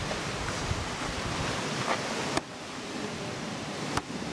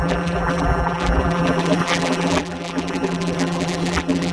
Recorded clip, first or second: first